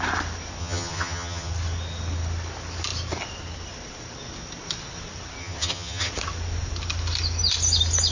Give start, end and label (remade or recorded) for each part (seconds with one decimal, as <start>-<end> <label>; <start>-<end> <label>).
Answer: 0.0-0.6 recorded; 0.6-1.5 remade; 1.5-5.4 recorded; 5.4-6.1 remade; 6.1-8.1 recorded